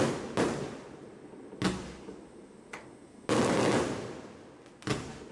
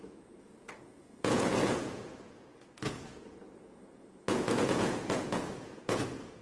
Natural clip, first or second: first